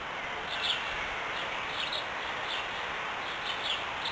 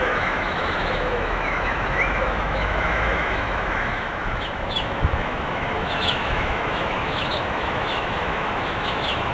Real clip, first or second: first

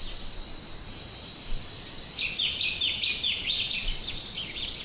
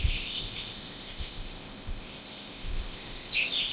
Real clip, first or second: first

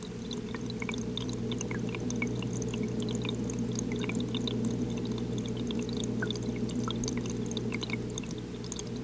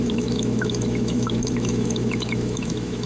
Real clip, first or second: first